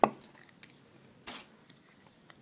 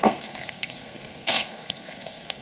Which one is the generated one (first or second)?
second